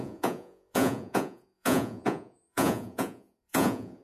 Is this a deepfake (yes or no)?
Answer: yes